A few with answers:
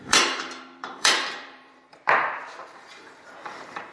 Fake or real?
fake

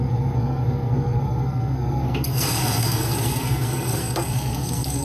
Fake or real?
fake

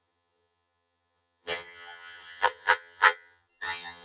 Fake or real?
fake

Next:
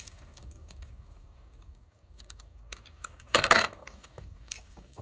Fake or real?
fake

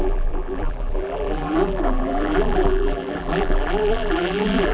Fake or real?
fake